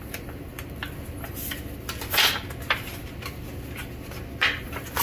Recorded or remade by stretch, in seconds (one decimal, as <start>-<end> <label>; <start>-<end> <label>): 0.0-5.0 recorded